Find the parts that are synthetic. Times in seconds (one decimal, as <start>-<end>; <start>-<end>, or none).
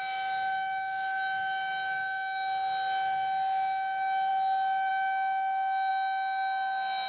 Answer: none